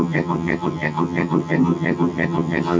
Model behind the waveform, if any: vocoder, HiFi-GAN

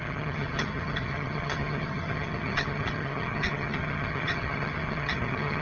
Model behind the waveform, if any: vocoder, HiFi-GAN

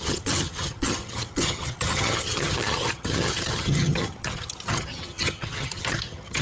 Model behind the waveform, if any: vocoder, HiFi-GAN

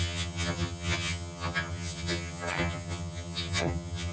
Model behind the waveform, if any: vocoder, HiFi-GAN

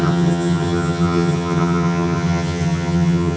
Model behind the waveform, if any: vocoder, HiFi-GAN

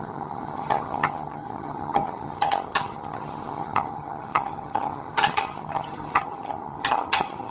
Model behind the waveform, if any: vocoder, HiFi-GAN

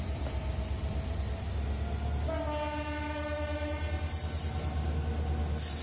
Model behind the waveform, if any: none